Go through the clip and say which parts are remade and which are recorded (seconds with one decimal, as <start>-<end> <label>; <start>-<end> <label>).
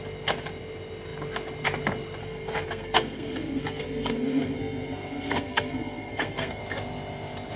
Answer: 0.0-2.2 recorded; 2.2-6.6 remade; 6.6-7.6 recorded